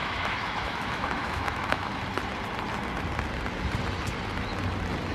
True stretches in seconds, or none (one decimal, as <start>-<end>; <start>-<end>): 1.9-5.1